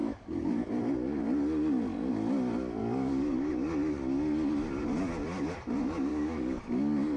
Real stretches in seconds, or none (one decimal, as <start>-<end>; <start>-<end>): 0.7-2.8; 3.5-6.1; 6.6-7.2